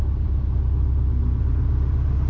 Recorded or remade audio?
recorded